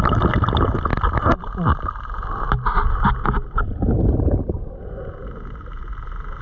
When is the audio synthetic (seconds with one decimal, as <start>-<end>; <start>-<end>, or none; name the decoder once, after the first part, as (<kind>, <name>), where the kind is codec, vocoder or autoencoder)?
none